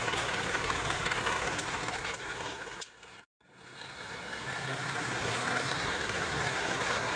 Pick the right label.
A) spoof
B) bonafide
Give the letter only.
A